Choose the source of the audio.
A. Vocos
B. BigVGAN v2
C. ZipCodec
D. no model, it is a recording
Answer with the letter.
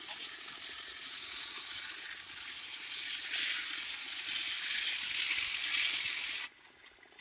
D